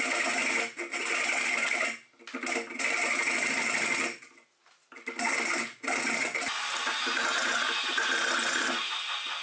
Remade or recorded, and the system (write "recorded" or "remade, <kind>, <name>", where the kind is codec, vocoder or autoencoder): recorded